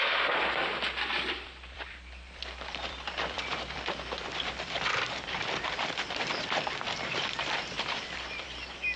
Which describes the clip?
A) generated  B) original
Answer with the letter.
A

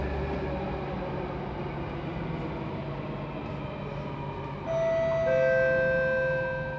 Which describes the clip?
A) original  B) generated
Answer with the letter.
A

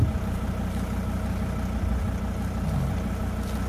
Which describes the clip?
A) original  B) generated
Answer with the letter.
A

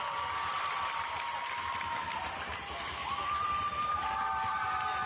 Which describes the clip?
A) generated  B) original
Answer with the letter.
B